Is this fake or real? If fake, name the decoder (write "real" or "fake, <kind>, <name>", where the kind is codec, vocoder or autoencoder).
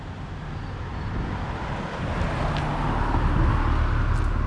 real